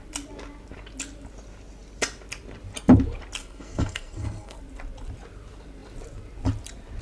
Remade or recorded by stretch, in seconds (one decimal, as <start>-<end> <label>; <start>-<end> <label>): 0.0-3.4 recorded; 3.4-4.6 remade; 4.6-7.0 recorded